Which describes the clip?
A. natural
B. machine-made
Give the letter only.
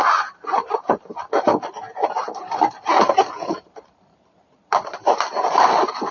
B